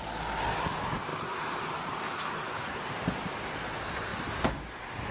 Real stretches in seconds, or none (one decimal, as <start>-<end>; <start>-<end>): 0.0-5.1